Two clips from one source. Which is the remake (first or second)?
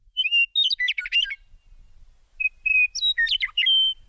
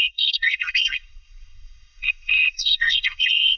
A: second